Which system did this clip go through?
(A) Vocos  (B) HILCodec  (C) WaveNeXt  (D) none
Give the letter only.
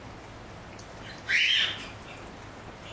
D